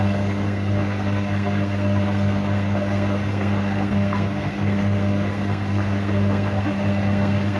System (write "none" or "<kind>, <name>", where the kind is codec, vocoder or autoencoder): codec, SNAC